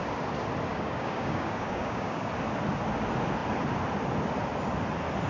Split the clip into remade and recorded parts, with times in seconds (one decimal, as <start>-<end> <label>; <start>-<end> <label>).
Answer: 0.0-0.7 recorded; 0.7-2.3 remade; 2.3-5.3 recorded